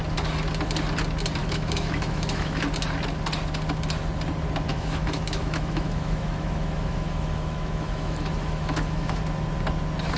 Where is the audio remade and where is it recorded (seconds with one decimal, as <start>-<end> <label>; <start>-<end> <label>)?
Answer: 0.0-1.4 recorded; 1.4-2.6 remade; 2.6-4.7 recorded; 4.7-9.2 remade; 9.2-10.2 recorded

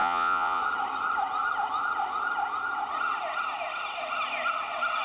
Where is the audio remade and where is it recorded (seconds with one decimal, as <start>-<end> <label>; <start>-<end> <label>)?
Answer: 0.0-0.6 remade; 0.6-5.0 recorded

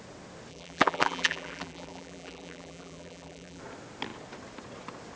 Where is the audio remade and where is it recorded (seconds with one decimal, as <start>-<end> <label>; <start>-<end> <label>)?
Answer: 0.0-0.5 recorded; 0.5-3.6 remade; 3.6-5.2 recorded

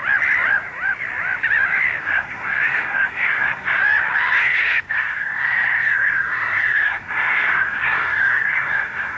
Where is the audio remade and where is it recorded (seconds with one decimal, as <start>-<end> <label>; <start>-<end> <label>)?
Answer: 0.0-2.0 recorded; 2.0-3.8 remade; 3.8-4.4 recorded; 4.4-9.2 remade

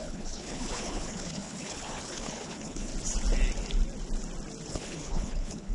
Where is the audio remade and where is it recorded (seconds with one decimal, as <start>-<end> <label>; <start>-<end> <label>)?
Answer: 0.0-2.9 remade; 2.9-4.7 recorded; 4.7-5.7 remade

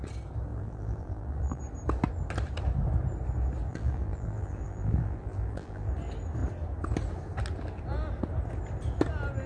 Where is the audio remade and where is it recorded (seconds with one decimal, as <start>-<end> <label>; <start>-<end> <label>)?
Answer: 0.0-0.5 recorded; 0.5-1.6 remade; 1.6-3.7 recorded; 3.7-5.9 remade; 5.9-9.5 recorded